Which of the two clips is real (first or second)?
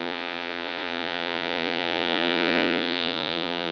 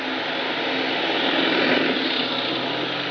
second